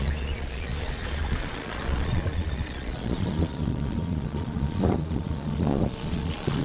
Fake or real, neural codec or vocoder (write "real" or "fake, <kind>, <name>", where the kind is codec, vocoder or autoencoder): fake, vocoder, Vocos